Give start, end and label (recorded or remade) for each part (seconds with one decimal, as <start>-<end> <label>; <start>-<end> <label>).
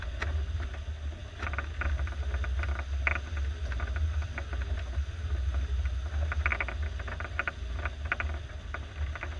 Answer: 0.0-9.4 recorded